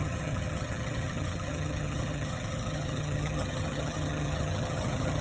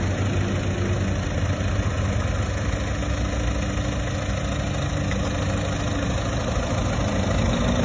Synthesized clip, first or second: first